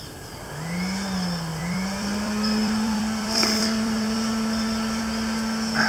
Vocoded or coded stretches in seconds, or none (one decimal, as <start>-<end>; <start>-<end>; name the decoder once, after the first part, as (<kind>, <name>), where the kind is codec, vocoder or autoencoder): 1.5-5.0 (vocoder, BigVGAN v2)